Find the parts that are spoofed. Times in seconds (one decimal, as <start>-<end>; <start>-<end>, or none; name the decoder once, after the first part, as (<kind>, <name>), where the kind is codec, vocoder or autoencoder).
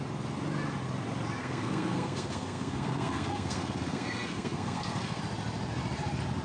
1.4-5.2 (codec, SNAC)